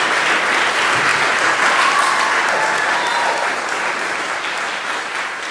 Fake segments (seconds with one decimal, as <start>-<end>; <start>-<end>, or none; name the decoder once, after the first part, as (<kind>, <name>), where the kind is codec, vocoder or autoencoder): none